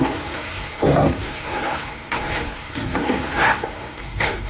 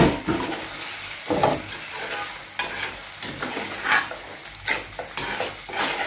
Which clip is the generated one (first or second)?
first